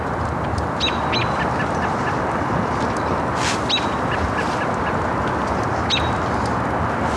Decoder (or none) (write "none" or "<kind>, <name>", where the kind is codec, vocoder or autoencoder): none